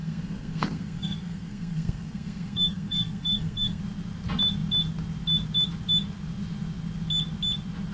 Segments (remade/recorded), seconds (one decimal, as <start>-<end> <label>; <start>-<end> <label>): 0.0-3.8 remade; 3.8-7.9 recorded